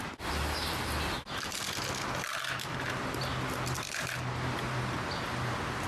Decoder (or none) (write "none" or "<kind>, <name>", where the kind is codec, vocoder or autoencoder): none